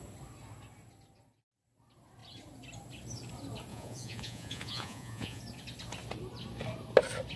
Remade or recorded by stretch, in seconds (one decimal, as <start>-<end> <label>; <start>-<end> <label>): 0.0-3.7 recorded; 3.7-5.4 remade; 5.4-7.4 recorded